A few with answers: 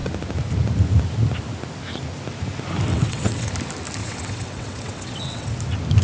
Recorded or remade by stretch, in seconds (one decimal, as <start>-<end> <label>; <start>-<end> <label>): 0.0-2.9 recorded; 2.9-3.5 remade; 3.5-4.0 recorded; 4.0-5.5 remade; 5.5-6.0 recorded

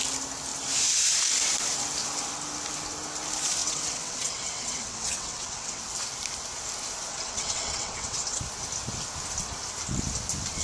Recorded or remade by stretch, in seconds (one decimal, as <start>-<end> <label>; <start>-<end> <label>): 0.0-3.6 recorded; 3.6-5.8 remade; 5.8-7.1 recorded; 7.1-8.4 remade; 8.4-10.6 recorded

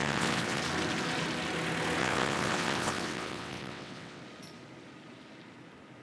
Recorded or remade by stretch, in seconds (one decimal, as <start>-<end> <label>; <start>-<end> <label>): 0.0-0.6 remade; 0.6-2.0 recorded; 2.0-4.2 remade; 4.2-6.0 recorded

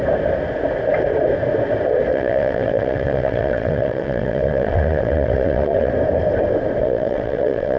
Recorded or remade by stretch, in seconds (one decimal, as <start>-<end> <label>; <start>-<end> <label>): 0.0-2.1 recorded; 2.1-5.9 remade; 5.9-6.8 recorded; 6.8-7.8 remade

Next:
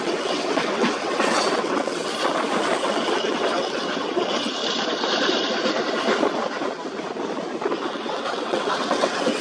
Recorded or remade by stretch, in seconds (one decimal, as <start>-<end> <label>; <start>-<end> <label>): 0.0-2.1 remade; 2.1-2.8 recorded; 2.8-4.6 remade; 4.6-7.9 recorded; 7.9-9.4 remade